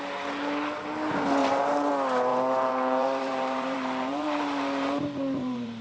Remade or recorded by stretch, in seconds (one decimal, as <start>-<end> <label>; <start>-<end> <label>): 0.0-1.4 recorded; 1.4-1.9 remade; 1.9-2.3 recorded; 2.3-5.8 remade